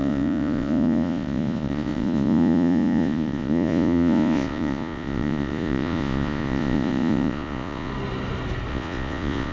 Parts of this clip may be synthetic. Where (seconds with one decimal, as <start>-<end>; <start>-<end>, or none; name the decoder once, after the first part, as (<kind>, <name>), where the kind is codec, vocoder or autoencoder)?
0.0-7.9 (vocoder, Vocos); 8.7-9.5